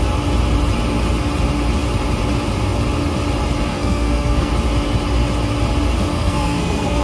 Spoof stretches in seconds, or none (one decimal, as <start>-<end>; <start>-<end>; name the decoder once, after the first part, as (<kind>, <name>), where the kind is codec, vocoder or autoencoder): 3.7-4.5 (codec, SNAC); 6.1-7.0